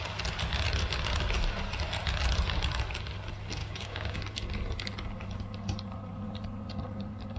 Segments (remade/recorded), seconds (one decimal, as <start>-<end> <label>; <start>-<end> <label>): 0.0-3.6 recorded; 3.6-4.2 remade; 4.2-7.4 recorded